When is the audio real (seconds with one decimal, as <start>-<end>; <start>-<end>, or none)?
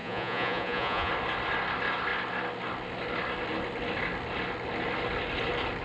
1.1-5.8